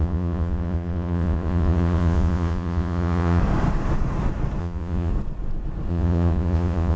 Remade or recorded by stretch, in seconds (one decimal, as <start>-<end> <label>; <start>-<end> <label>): 0.0-3.4 remade; 3.4-4.6 recorded; 4.6-5.1 remade; 5.1-5.9 recorded; 5.9-7.0 remade